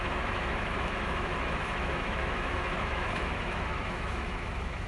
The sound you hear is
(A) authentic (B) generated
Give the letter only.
B